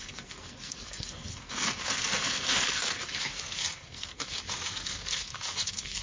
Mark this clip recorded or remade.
remade